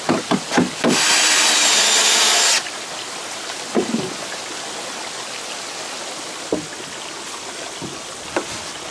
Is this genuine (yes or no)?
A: yes